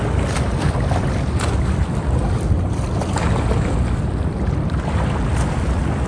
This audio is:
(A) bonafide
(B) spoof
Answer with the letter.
A